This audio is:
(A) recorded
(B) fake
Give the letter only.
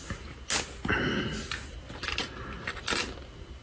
A